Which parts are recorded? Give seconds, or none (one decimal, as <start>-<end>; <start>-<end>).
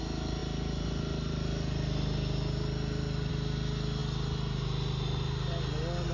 0.0-6.1